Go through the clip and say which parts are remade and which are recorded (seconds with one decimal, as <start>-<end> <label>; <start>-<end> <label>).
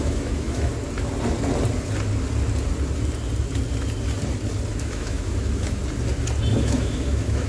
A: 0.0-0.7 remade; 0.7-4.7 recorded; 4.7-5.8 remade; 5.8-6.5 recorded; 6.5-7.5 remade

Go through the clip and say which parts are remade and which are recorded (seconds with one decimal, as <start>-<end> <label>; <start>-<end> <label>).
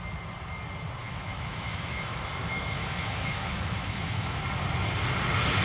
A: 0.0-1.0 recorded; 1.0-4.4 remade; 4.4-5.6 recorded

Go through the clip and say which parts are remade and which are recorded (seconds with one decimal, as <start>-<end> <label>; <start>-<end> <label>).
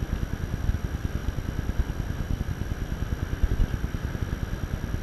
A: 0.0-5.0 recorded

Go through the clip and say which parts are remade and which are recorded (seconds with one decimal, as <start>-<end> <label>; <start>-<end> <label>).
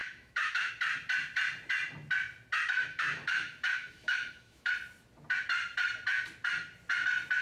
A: 0.0-0.7 remade; 0.7-2.8 recorded; 2.8-4.7 remade; 4.7-7.4 recorded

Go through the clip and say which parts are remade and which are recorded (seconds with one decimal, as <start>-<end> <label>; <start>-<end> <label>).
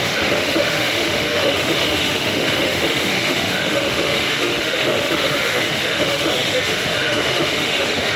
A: 0.0-8.2 remade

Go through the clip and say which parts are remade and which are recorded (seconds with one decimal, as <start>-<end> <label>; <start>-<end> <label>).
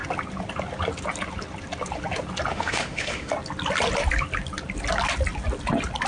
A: 0.0-2.5 recorded; 2.5-3.3 remade; 3.3-6.1 recorded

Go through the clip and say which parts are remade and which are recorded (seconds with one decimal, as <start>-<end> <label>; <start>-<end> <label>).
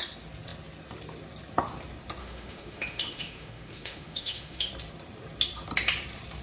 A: 0.0-2.2 recorded; 2.2-4.7 remade; 4.7-6.4 recorded